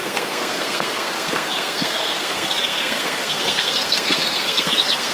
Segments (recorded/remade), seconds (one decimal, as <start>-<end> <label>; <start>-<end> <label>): 0.0-5.1 remade